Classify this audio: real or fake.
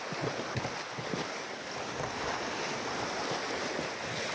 real